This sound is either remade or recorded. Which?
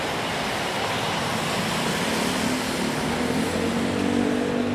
recorded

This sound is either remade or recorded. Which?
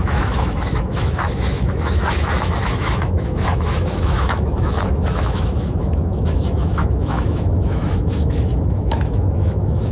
remade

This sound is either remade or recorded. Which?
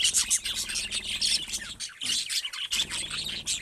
recorded